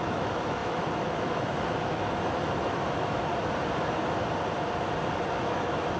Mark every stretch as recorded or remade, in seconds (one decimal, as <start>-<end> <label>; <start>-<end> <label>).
0.0-3.3 remade; 3.3-5.3 recorded; 5.3-6.0 remade